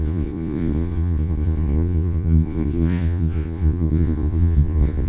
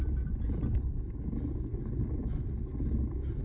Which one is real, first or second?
second